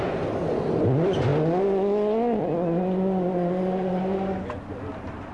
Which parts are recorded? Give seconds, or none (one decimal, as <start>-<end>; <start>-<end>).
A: 0.0-5.3